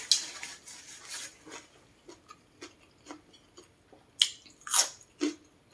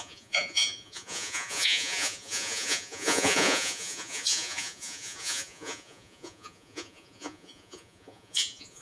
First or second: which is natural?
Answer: first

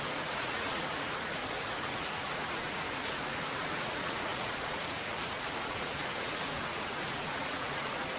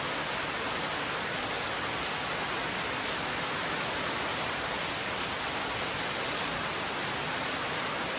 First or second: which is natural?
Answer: second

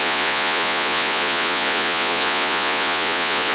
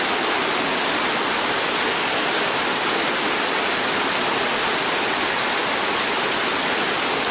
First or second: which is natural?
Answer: second